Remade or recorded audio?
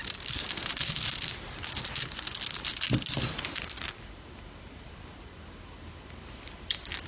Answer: recorded